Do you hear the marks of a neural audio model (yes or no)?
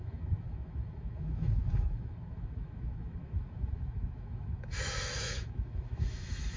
yes